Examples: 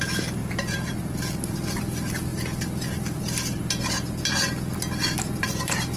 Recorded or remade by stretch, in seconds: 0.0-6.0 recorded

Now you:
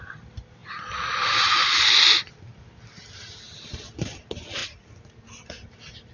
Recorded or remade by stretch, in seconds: 0.0-0.6 recorded; 0.6-3.2 remade; 3.2-6.1 recorded

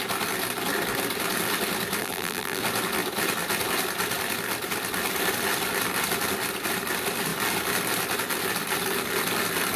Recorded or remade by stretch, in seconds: 0.0-2.0 recorded; 2.0-2.6 remade; 2.6-9.8 recorded